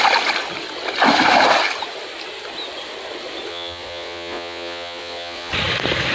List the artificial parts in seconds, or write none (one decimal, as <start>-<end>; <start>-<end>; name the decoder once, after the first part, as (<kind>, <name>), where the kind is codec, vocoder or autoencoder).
3.5-5.5 (vocoder, Vocos)